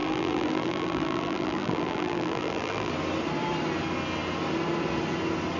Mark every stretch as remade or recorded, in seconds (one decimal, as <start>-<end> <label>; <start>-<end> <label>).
0.0-2.9 remade; 2.9-5.6 recorded